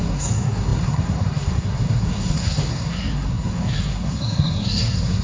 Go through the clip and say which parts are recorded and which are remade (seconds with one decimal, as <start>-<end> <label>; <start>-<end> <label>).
0.0-5.2 remade